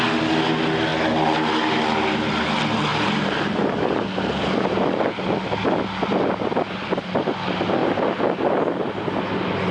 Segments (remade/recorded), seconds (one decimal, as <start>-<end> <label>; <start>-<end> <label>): 0.0-9.7 recorded